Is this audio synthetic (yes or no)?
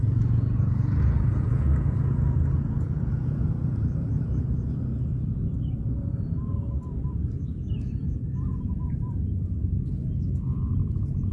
yes